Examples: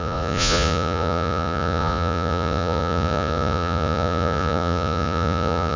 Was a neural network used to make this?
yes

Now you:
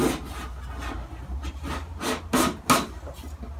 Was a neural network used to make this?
no